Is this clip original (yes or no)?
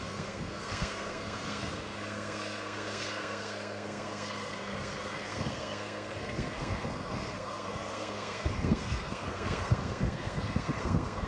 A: no